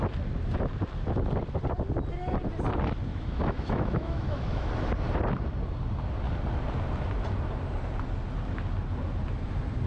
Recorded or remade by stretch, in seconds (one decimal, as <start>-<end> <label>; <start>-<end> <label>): 0.0-3.1 recorded; 3.1-4.7 remade; 4.7-9.9 recorded